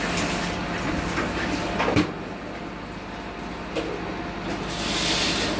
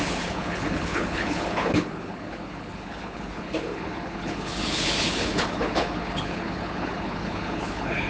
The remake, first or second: second